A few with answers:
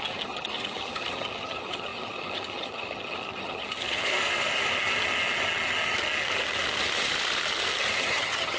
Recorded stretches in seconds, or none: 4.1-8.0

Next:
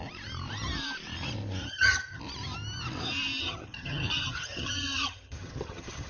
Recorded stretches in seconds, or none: 0.0-1.6; 2.2-3.4

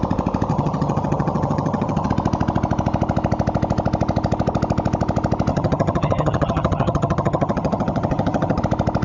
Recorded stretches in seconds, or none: 0.0-0.5; 2.1-5.5; 8.6-9.0

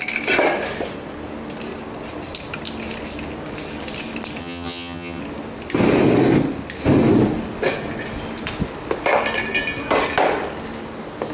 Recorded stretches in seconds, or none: 0.0-4.4; 5.2-11.3